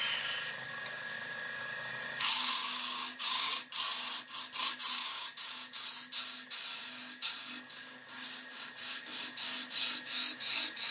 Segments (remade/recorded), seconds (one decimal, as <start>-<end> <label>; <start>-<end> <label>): 0.0-3.5 remade; 3.5-4.6 recorded; 4.6-10.9 remade